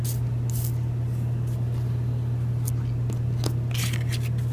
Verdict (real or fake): real